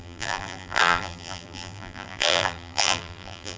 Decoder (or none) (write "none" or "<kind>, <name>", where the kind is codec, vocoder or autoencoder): vocoder, BigVGAN v2